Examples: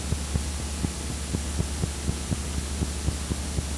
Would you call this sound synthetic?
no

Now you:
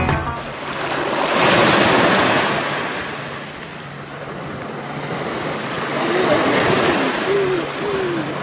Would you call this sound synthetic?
no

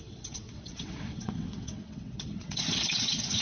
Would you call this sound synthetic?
yes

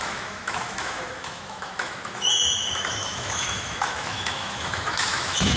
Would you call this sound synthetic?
yes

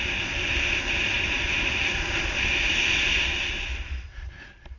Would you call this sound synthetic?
no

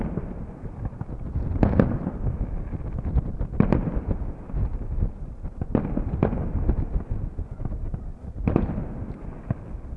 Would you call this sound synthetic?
no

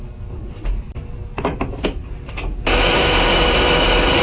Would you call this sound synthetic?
no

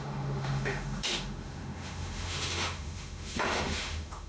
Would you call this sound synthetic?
yes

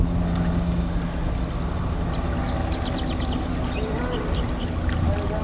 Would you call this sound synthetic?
no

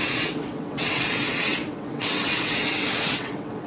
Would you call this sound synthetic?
yes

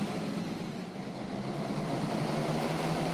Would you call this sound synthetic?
yes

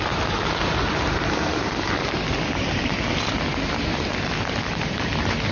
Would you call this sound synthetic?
yes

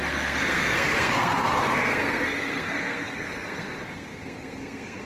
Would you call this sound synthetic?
yes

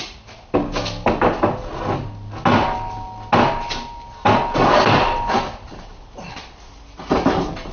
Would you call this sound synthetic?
no